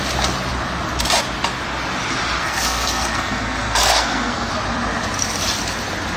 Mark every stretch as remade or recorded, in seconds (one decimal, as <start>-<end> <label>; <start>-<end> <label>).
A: 0.0-2.4 recorded; 2.4-4.5 remade; 4.5-6.2 recorded